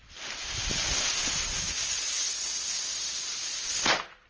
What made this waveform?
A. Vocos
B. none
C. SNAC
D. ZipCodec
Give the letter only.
B